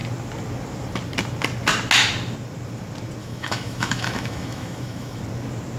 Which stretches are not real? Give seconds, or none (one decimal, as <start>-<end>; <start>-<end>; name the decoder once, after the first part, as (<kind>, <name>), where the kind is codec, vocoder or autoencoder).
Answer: 3.2-5.2 (autoencoder, DAC-VAE)

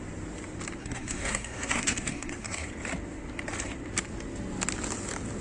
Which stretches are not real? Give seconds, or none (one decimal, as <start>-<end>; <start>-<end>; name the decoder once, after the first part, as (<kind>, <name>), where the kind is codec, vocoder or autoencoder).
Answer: 0.8-2.7 (codec, SNAC)

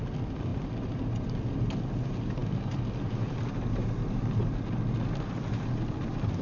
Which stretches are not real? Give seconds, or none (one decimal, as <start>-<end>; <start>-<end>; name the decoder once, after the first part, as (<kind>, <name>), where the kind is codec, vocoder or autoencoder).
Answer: none

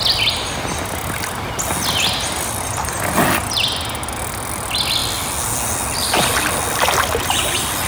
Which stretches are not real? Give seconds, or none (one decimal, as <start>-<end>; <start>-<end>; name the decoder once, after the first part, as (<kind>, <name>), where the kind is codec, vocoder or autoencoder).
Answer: none

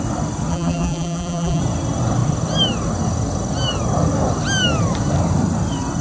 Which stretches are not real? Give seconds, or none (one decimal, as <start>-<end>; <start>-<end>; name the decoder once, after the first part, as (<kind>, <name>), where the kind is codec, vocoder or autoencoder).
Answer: 0.5-1.6 (vocoder, BigVGAN v2)